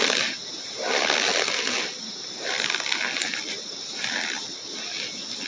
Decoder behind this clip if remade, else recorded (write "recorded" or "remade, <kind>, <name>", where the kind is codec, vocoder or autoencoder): recorded